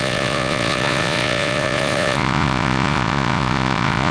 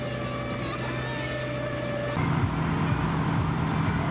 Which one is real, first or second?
second